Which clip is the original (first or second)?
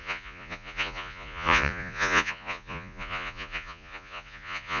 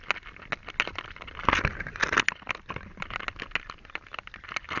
second